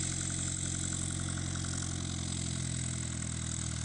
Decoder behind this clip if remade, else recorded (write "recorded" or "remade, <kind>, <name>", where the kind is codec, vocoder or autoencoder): recorded